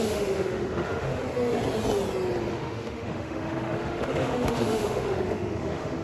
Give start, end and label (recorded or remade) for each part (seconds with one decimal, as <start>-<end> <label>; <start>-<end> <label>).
0.0-1.2 remade; 1.2-2.5 recorded; 2.5-6.0 remade